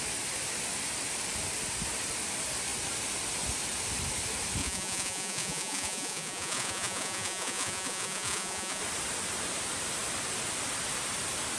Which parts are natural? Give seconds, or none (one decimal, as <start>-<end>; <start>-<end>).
0.0-4.6; 8.8-11.6